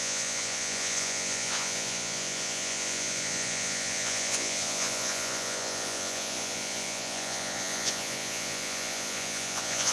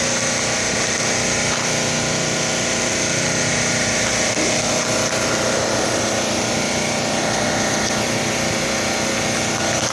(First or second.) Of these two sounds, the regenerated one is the first